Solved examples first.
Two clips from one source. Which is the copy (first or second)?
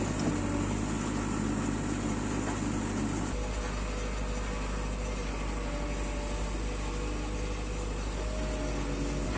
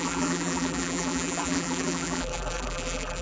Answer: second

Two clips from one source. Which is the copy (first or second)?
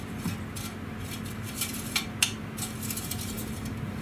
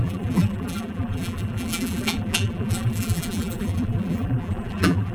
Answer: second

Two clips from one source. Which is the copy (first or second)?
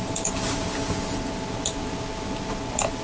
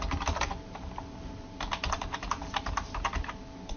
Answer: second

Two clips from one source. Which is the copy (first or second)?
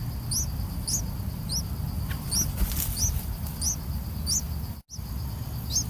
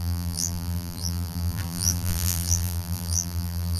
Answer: second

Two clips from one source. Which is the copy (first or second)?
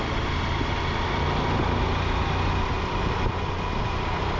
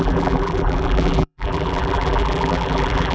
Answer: second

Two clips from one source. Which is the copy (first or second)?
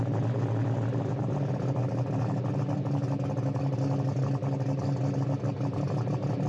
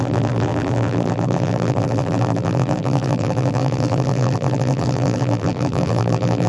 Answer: second